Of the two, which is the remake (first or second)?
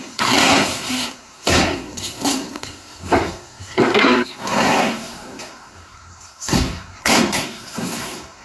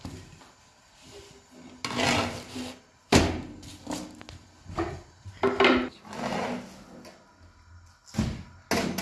first